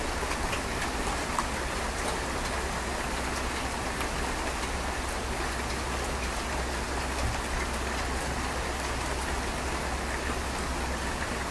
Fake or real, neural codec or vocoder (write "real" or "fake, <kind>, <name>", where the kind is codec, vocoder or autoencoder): real